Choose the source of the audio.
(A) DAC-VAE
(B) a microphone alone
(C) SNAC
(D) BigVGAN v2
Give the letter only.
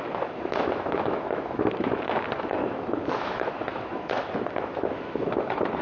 A